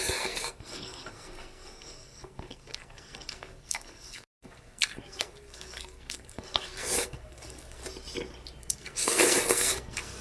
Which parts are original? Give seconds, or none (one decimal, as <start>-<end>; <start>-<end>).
7.8-8.6